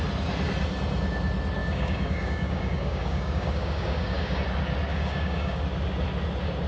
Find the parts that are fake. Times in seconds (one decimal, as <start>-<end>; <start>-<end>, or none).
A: 1.6-4.4; 4.9-5.6